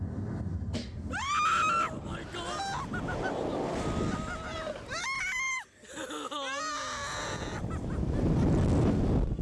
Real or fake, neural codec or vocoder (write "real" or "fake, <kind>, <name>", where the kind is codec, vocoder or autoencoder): real